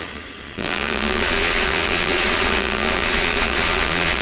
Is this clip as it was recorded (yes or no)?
no